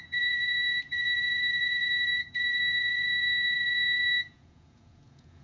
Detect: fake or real fake